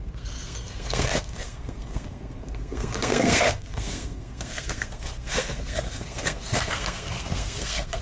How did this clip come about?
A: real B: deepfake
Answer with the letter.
B